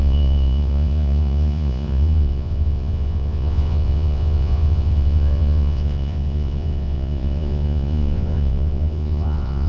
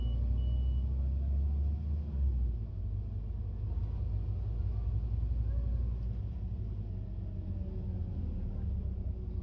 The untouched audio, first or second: second